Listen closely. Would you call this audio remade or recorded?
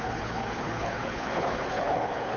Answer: remade